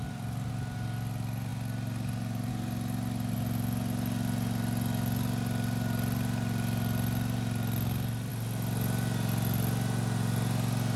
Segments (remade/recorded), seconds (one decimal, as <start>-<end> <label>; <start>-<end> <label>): 0.0-11.0 recorded